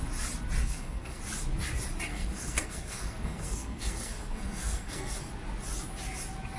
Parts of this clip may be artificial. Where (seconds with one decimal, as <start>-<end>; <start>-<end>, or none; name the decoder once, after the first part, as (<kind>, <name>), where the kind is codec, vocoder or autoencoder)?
0.6-1.2 (codec, SNAC); 2.1-5.3